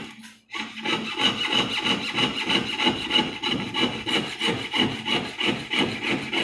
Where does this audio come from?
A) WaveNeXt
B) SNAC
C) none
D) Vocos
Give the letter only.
C